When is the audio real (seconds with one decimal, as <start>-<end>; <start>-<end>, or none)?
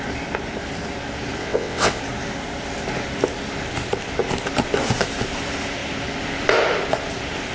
0.0-1.4; 2.0-7.5